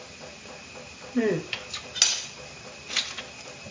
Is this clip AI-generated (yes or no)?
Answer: no